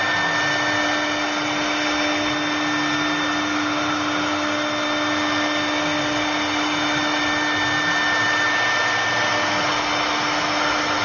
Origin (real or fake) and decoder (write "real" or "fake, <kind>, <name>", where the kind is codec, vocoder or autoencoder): real